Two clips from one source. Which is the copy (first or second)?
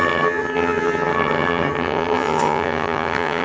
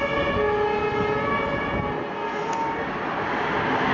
first